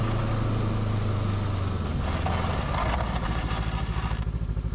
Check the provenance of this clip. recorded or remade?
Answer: recorded